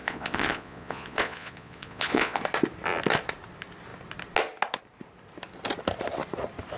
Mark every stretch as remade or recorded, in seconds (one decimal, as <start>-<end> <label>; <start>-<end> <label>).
0.0-2.4 remade; 2.4-6.8 recorded